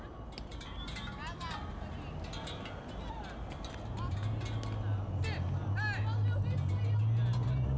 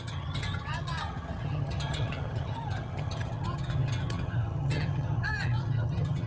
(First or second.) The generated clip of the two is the second